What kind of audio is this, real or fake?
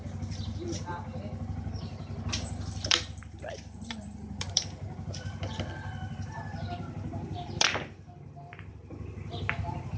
fake